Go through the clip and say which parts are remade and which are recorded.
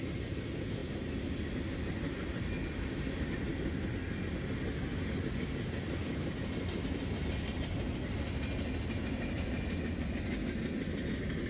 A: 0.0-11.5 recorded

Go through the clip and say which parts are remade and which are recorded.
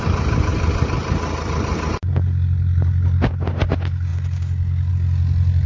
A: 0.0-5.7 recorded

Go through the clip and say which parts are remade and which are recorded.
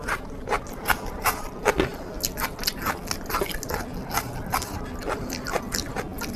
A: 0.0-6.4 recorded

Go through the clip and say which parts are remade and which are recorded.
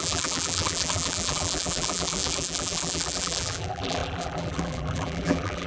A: 0.0-5.7 remade